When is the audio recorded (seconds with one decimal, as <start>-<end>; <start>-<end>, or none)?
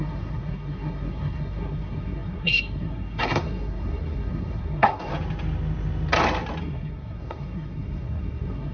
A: 5.1-6.6